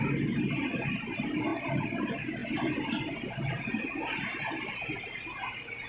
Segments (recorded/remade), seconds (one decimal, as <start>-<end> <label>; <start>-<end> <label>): 0.0-5.9 recorded

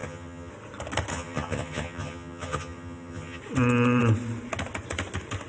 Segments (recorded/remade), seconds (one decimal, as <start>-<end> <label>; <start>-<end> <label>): 0.0-0.5 remade; 0.5-1.1 recorded; 1.1-3.4 remade; 3.4-5.5 recorded

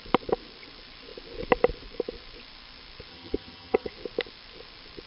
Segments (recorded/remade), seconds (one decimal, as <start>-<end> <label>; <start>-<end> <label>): 0.0-3.1 recorded; 3.1-3.9 remade; 3.9-5.1 recorded